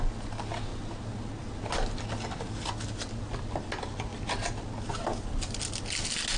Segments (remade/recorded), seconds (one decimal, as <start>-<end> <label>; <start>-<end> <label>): 0.0-6.4 recorded